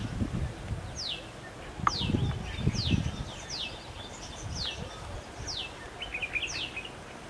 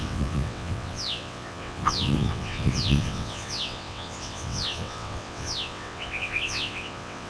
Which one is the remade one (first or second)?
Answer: second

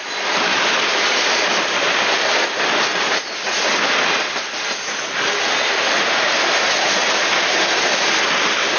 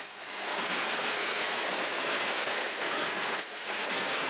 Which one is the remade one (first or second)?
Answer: second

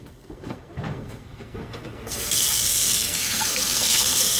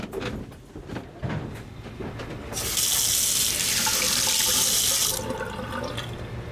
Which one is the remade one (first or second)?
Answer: first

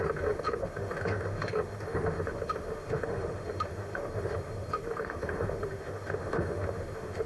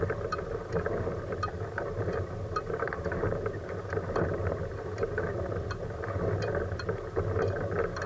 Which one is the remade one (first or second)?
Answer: first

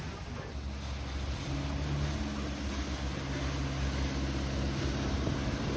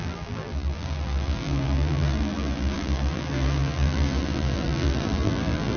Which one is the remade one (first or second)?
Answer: second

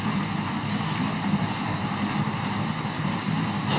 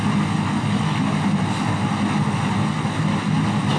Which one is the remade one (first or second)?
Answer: first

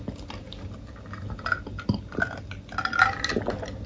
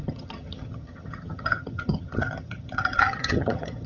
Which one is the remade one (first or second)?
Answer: second